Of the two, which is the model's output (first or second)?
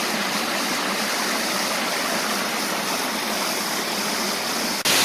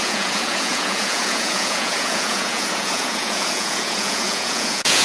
second